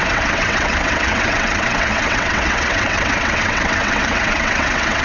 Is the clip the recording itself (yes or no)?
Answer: no